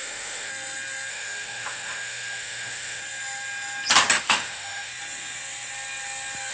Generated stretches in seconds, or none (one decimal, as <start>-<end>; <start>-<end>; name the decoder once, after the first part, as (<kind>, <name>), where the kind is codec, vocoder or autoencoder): 0.0-0.5 (autoencoder, DAC-VAE); 1.1-3.0; 4.2-4.9